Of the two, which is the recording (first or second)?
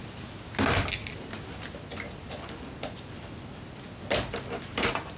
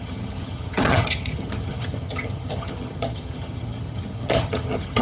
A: first